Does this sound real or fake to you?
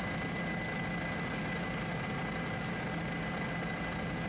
real